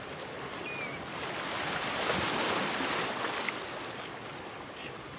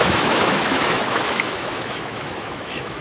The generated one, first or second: second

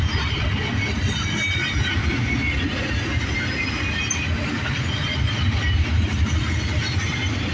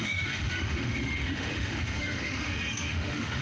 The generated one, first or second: second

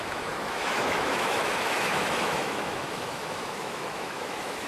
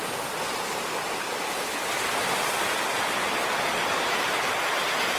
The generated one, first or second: first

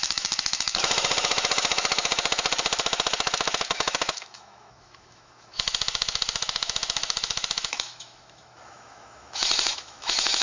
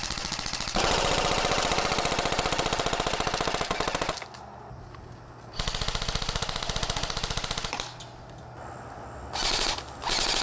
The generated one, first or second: first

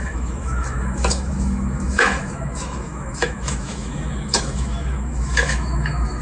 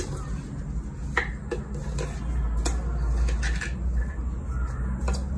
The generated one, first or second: first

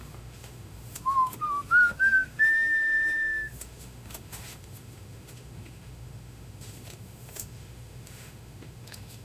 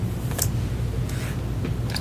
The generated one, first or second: first